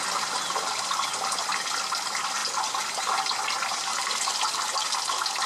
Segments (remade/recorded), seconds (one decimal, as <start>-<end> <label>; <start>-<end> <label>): 0.0-5.5 recorded

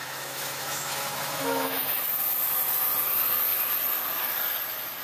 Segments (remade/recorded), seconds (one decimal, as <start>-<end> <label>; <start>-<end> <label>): 0.0-2.0 remade; 2.0-5.0 recorded

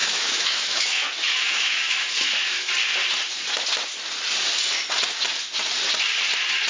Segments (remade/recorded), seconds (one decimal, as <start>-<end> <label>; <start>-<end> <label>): 0.0-2.7 remade; 2.7-6.7 recorded